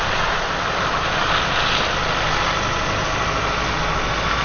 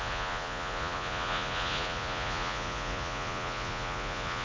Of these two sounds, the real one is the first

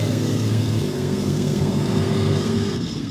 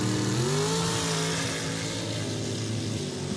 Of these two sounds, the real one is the second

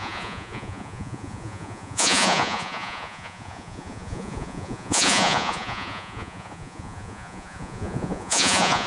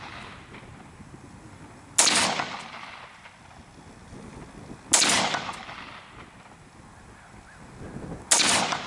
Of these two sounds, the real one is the second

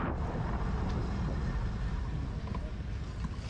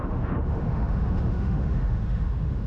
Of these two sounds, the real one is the first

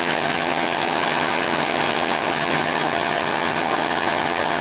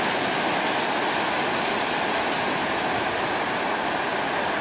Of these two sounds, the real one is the second